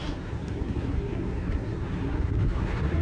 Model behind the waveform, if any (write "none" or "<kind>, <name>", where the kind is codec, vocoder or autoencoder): codec, SNAC